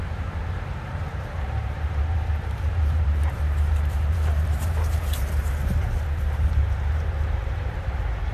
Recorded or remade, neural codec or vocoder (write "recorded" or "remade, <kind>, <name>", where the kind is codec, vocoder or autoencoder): remade, vocoder, BigVGAN v2